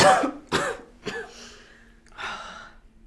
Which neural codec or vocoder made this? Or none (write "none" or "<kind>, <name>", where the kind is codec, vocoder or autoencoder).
none